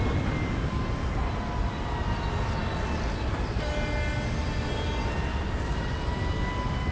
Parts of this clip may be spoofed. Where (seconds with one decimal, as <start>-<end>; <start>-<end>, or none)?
none